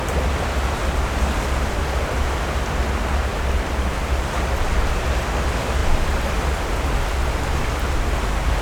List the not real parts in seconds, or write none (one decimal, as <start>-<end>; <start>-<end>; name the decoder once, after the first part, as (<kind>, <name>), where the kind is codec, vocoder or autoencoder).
5.8-6.7 (vocoder, BigVGAN v2)